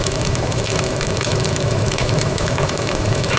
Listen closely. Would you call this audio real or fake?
fake